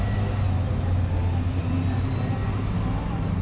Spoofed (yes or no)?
no